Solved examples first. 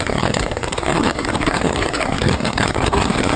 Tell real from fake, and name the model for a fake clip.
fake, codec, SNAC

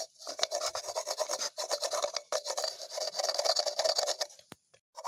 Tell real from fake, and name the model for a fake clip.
real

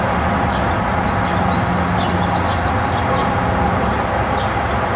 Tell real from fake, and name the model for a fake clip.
real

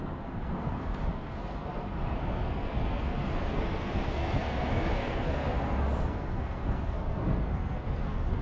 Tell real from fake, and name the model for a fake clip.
fake, codec, SNAC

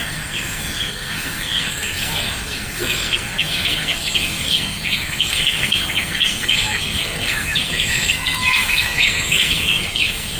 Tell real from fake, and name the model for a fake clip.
fake, codec, SNAC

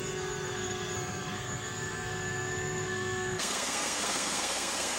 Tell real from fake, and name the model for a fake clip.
fake, codec, SNAC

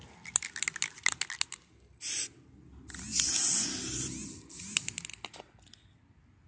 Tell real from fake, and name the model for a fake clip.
real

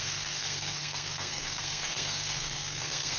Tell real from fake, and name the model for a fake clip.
fake, codec, SNAC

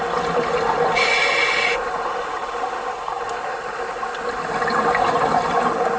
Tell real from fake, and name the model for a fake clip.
real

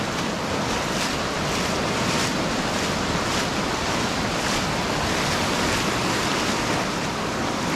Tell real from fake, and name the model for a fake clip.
real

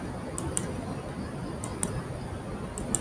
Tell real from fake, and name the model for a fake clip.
real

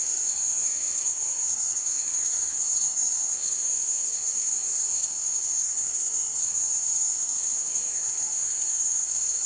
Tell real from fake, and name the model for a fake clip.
fake, codec, SNAC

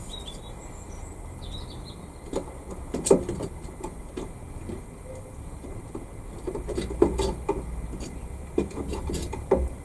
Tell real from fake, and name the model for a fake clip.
real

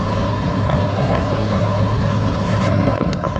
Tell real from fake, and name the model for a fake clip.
fake, codec, SNAC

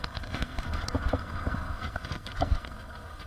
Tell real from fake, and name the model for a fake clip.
fake, codec, SNAC